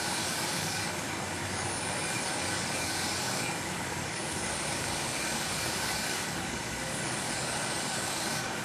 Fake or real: fake